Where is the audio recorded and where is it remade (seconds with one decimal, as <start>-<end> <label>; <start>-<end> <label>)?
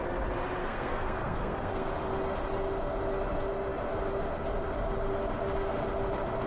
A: 0.0-0.6 recorded; 0.6-1.9 remade; 1.9-6.5 recorded